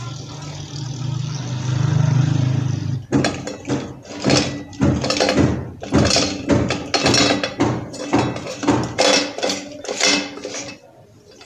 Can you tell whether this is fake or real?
real